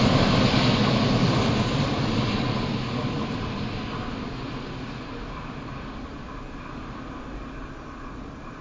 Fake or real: real